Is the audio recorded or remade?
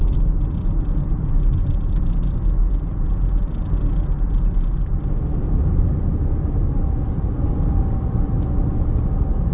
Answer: recorded